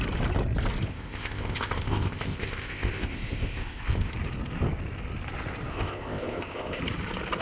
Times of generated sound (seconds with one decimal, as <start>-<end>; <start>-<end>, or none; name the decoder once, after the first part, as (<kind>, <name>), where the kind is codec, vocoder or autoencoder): 0.9-4.1 (codec, ZipCodec); 5.7-6.8